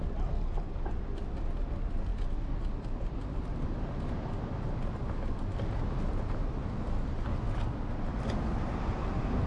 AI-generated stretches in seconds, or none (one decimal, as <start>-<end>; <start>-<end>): none